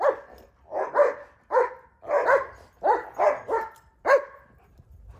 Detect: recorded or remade recorded